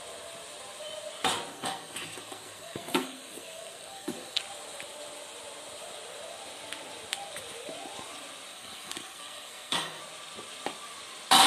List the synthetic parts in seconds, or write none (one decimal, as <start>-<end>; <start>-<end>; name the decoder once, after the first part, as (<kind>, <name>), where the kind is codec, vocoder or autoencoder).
1.5-4.4 (codec, SNAC); 8.5-10.0